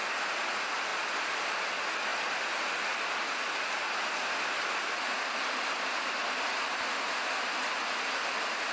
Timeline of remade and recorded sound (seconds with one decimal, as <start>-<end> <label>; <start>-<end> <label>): 0.0-8.7 recorded